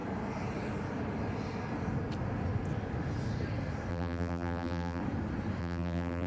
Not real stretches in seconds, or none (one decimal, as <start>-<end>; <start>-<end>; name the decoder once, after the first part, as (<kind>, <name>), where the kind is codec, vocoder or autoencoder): 3.9-5.0 (vocoder, BigVGAN v2); 5.6-6.3